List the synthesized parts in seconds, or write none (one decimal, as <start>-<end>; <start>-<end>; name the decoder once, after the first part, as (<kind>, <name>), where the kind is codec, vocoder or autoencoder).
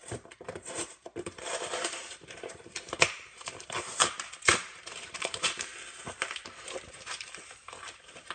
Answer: 0.0-5.7 (vocoder, BigVGAN v2); 6.9-8.3